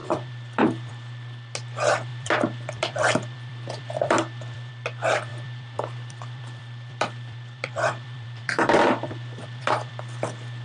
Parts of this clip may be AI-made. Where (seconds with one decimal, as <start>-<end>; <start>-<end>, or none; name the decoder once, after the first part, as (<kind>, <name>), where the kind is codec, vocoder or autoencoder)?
0.0-0.9 (vocoder, BigVGAN v2); 2.1-4.7; 5.3-9.9